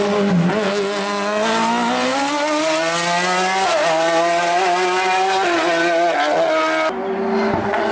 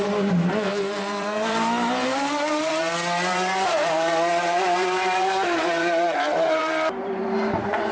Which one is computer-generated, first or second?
second